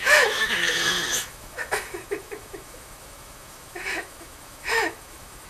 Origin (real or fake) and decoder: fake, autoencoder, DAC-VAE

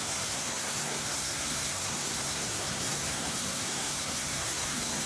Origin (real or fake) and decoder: fake, codec, SNAC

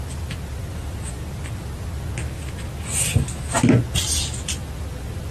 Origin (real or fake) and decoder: real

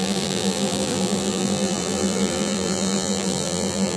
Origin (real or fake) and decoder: fake, vocoder, BigVGAN v2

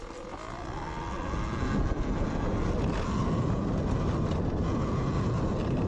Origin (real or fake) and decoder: real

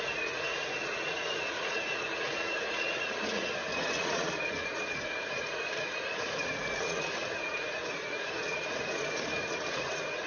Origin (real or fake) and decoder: fake, vocoder, Vocos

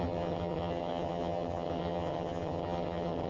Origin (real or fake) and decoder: fake, vocoder, HiFi-GAN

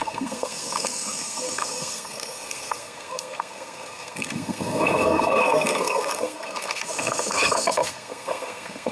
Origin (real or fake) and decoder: fake, codec, SNAC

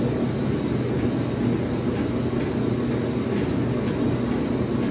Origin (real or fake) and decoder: real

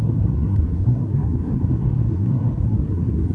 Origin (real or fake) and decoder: fake, codec, SNAC